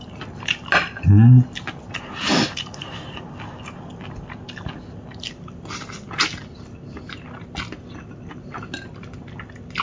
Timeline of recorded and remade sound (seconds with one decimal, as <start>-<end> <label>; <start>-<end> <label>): 0.0-9.8 recorded